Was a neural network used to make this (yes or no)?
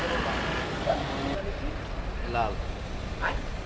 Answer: no